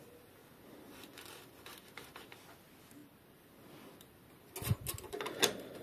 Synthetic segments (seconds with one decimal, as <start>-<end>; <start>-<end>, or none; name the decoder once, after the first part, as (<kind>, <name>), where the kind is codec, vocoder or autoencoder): none

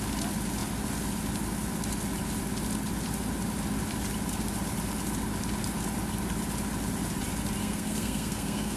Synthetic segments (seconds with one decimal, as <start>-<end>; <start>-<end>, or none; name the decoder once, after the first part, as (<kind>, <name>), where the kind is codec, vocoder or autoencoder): 7.6-8.8 (codec, SNAC)

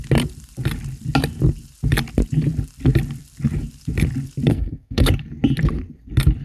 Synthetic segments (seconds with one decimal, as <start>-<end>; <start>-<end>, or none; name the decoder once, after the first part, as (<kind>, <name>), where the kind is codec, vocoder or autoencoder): 4.5-5.1 (codec, SNAC)

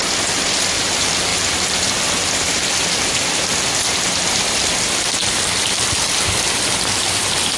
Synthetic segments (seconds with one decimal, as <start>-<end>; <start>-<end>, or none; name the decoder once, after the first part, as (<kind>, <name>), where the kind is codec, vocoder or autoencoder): none

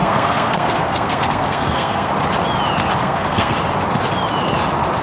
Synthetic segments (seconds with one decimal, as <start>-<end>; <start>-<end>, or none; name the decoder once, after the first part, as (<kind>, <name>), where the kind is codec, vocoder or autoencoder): 0.0-2.1 (codec, SNAC); 3.0-3.6